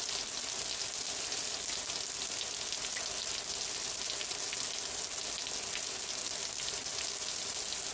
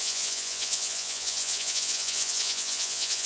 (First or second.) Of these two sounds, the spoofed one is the second